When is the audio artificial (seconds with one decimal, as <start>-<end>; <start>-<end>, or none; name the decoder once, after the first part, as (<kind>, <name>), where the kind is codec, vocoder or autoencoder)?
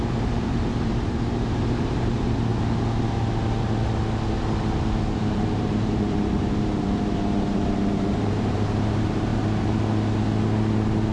0.0-2.5 (vocoder, BigVGAN v2); 5.0-9.3